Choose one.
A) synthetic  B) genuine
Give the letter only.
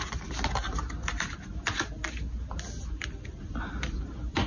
B